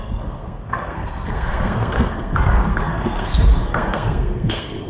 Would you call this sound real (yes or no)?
no